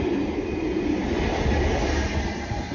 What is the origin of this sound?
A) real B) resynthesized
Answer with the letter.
A